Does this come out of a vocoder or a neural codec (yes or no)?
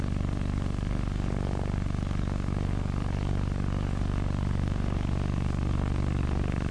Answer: yes